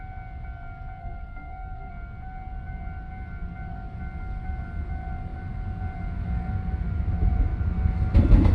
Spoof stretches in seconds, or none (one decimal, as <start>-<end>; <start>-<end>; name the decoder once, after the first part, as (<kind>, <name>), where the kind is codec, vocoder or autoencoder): 1.0-1.9 (codec, SNAC)